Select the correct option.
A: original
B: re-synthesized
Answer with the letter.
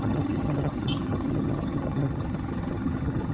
B